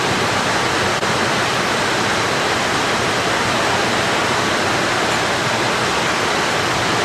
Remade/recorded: recorded